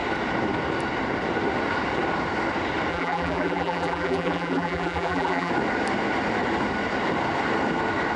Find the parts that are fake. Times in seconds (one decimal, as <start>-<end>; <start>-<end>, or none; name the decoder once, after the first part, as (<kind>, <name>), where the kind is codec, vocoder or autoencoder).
2.9-5.5 (vocoder, BigVGAN v2)

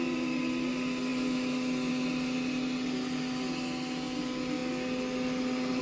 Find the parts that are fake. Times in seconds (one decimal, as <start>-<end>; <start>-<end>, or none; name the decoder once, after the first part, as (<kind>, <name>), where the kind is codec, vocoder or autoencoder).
none

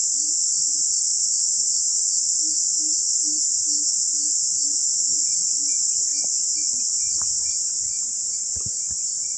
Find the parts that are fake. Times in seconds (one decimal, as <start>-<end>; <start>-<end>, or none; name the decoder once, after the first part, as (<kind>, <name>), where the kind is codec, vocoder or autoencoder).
0.0-2.7 (vocoder, BigVGAN v2); 3.4-6.1; 9.0-9.4